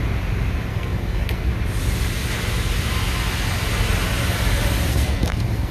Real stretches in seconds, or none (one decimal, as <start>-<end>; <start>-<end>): 0.0-0.7; 1.5-4.9